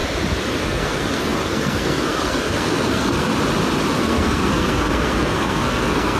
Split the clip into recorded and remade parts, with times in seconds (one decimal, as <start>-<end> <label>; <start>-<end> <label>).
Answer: 0.0-0.6 recorded; 0.6-3.3 remade; 3.3-3.9 recorded; 3.9-6.2 remade